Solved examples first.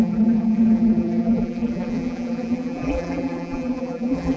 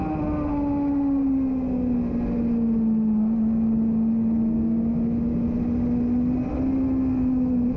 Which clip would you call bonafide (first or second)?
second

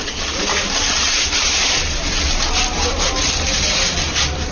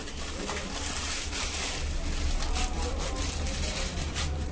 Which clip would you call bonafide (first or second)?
second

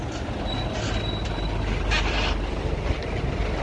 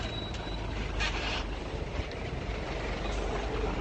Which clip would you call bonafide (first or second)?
first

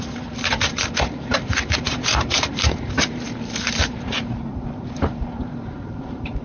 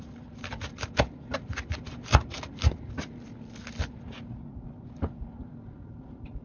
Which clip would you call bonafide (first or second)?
second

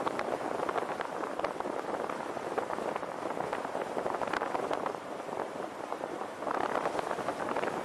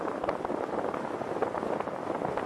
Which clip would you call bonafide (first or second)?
second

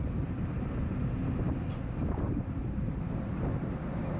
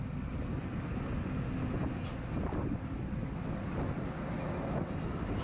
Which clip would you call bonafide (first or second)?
second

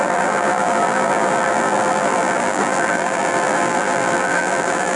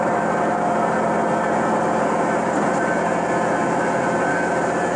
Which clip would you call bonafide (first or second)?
second